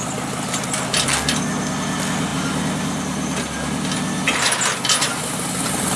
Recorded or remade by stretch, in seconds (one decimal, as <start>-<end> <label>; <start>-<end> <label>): 0.0-6.0 recorded